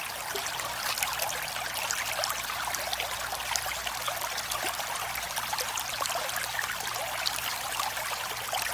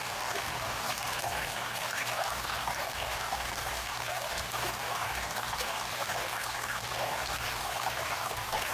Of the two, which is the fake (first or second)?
second